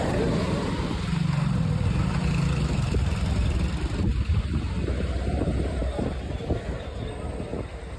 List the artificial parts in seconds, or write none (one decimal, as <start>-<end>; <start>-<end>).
none